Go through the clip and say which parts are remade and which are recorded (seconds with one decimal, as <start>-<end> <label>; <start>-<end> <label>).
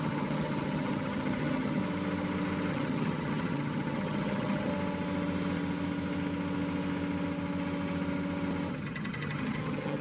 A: 0.0-1.8 remade; 1.8-2.7 recorded; 2.7-4.7 remade; 4.7-8.7 recorded; 8.7-10.0 remade